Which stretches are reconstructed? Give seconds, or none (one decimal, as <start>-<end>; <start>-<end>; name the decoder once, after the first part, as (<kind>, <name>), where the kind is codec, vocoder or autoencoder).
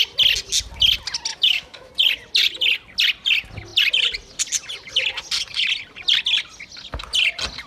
1.3-1.9 (autoencoder, DAC-VAE)